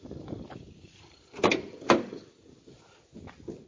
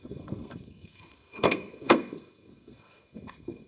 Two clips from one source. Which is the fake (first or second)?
second